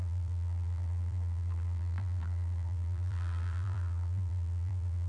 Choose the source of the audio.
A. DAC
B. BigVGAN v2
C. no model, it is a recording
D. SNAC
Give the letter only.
B